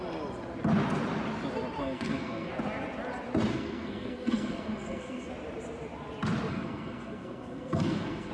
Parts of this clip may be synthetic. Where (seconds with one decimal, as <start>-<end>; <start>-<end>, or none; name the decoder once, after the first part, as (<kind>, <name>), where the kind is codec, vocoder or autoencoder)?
1.8-2.5 (codec, SNAC); 3.5-5.3; 6.5-8.3